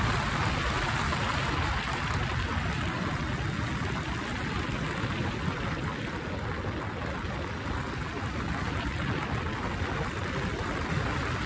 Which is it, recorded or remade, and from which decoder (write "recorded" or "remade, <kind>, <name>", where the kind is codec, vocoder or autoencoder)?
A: recorded